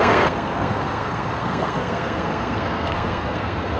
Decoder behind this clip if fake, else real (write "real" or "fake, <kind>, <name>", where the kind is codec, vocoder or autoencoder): fake, codec, SNAC